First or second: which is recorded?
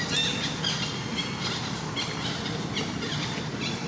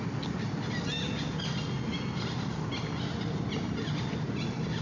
second